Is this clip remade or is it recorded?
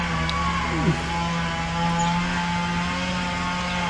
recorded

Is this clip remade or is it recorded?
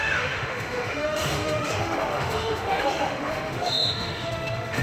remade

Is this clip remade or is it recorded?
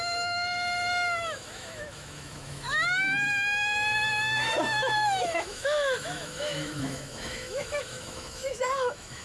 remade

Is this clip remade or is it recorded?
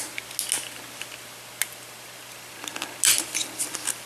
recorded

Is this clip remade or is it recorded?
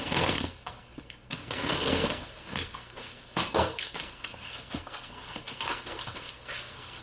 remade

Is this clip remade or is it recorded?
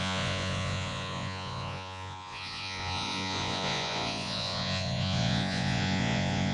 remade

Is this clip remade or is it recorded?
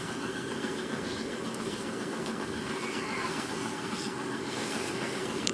remade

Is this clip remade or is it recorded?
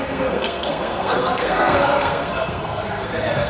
remade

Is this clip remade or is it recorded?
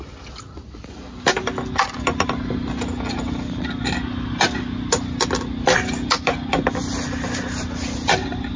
recorded